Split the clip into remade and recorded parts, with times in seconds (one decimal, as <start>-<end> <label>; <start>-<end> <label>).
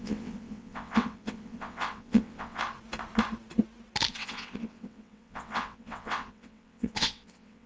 0.0-2.6 remade; 2.6-4.1 recorded; 4.1-7.7 remade